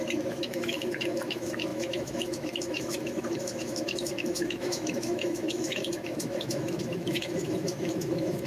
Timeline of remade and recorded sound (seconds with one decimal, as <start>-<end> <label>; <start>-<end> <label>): 0.0-8.5 remade